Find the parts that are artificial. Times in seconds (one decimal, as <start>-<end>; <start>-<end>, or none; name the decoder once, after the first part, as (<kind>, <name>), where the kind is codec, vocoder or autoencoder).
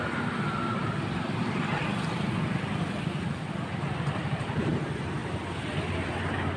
0.8-4.7 (vocoder, BigVGAN v2)